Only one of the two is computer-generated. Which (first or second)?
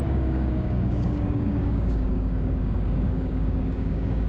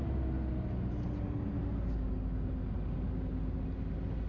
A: first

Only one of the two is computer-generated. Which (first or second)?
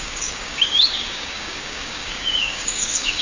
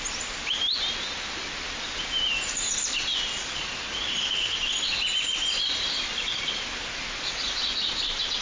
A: first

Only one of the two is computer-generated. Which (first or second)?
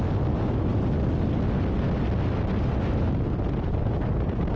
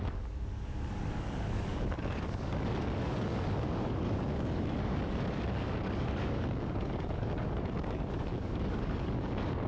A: second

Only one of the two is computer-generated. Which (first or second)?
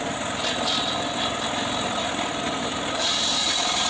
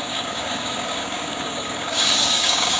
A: second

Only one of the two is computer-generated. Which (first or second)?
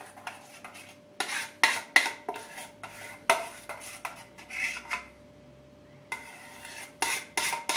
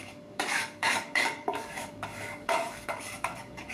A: second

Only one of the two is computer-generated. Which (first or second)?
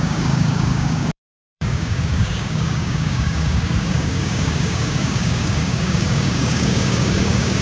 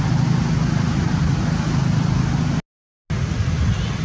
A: first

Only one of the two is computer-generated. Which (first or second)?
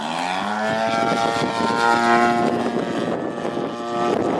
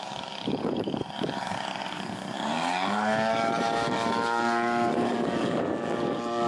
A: second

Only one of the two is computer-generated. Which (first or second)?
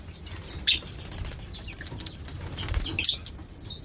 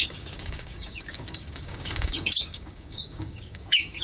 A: second